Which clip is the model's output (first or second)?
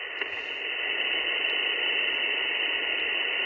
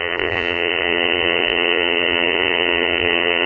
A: second